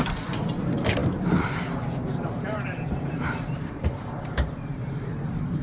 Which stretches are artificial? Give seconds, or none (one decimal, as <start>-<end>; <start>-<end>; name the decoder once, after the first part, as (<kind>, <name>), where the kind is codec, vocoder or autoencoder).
1.0-1.5 (vocoder, BigVGAN v2); 2.0-5.6